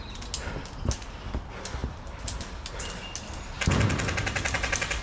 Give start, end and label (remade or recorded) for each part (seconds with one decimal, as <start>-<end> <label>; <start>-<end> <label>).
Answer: 0.0-5.0 recorded